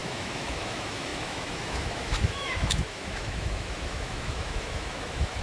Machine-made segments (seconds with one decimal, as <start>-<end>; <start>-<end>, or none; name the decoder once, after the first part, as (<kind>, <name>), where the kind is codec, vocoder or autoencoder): 0.0-5.4 (autoencoder, DAC-VAE)

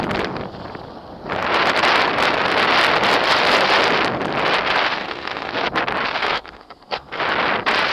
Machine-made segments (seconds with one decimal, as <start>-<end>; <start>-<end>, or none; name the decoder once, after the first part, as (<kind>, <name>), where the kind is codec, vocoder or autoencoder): 5.0-5.5 (codec, SNAC); 6.2-7.2

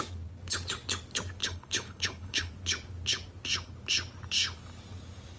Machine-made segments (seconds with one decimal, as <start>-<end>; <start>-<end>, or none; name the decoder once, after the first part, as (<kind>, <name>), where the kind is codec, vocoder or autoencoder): 1.4-2.5 (codec, HILCodec)

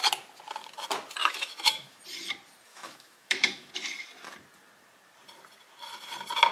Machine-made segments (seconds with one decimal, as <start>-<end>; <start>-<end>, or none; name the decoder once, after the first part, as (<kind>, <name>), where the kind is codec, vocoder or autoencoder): 1.2-2.0 (autoencoder, DAC-VAE); 2.7-3.7

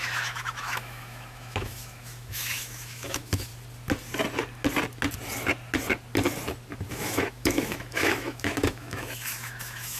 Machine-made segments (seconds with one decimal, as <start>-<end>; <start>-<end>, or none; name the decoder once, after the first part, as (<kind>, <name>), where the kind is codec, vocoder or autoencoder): 0.0-3.5 (autoencoder, DAC-VAE); 6.9-10.0

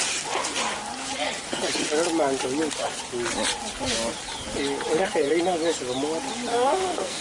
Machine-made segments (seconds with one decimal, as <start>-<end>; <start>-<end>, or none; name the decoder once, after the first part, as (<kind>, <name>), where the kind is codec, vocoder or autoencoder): 6.5-7.2 (codec, SNAC)

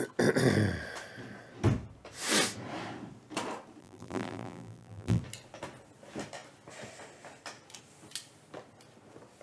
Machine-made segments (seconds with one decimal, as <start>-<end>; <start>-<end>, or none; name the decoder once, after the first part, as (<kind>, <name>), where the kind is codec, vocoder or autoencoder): 3.8-5.2 (vocoder, BigVGAN v2)